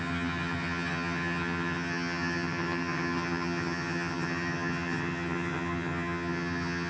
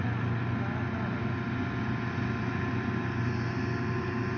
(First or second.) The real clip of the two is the second